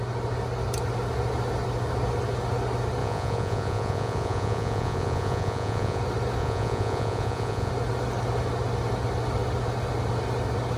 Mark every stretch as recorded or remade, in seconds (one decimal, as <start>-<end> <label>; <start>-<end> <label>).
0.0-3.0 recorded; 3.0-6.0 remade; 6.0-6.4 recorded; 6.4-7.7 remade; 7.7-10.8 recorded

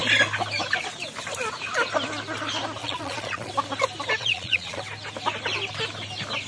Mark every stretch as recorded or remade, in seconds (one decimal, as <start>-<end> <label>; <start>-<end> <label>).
0.0-2.8 recorded; 2.8-3.5 remade; 3.5-4.2 recorded; 4.2-4.8 remade; 4.8-6.5 recorded

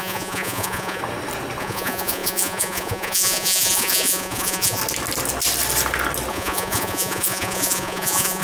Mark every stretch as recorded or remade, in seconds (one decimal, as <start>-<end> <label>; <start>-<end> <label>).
0.0-1.0 remade; 1.0-1.6 recorded; 1.6-4.8 remade; 4.8-6.3 recorded; 6.3-8.4 remade

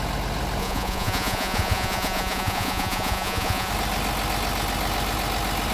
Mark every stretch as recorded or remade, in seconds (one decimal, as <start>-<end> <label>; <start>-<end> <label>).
0.0-0.6 recorded; 0.6-3.7 remade; 3.7-5.7 recorded

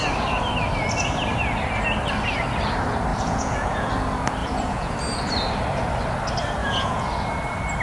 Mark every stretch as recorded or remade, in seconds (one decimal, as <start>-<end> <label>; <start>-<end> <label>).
0.0-3.1 recorded; 3.1-3.9 remade; 3.9-4.4 recorded; 4.4-4.9 remade; 4.9-6.6 recorded; 6.6-7.1 remade; 7.1-7.8 recorded

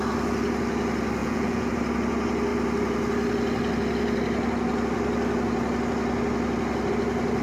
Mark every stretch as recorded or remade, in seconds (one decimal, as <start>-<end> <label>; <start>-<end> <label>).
0.0-1.2 recorded; 1.2-1.7 remade; 1.7-7.4 recorded

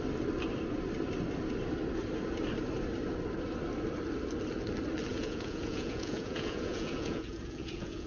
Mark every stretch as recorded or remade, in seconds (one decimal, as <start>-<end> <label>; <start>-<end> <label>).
0.0-5.1 recorded; 5.1-8.1 remade

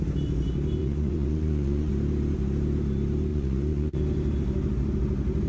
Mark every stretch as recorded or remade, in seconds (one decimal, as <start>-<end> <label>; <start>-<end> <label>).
0.0-0.8 recorded; 0.8-1.9 remade; 1.9-3.3 recorded; 3.3-4.0 remade; 4.0-5.5 recorded